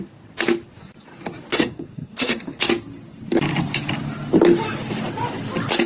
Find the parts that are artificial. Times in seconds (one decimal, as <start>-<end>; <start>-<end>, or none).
1.5-2.6